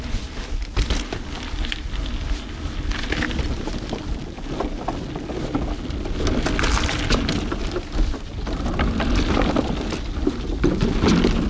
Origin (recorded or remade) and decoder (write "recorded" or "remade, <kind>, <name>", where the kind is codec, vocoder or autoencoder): recorded